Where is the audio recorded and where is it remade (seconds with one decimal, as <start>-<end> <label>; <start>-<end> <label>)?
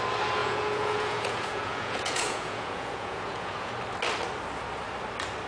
0.0-0.4 recorded; 0.4-3.7 remade; 3.7-5.5 recorded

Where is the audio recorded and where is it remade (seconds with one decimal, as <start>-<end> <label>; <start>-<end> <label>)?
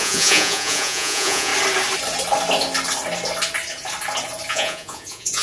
0.0-1.5 remade; 1.5-4.5 recorded; 4.5-5.4 remade